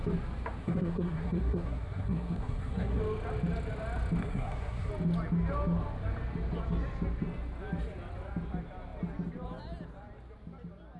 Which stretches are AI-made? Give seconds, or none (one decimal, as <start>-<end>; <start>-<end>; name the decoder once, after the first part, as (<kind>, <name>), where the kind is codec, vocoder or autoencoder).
0.6-3.0 (codec, SNAC); 4.2-4.9